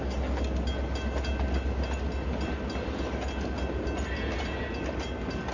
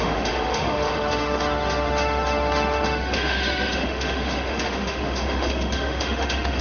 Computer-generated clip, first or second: second